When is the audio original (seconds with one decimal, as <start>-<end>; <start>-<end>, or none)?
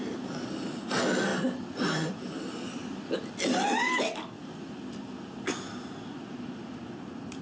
0.0-7.4